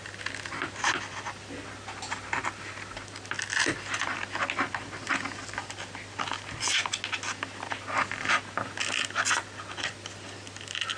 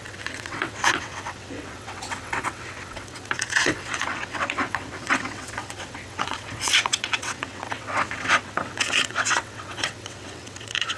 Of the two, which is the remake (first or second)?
second